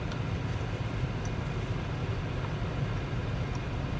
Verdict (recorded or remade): recorded